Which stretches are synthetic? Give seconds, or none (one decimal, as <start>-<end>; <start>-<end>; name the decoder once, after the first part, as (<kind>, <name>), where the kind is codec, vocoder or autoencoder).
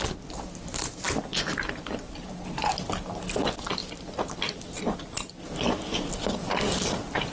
none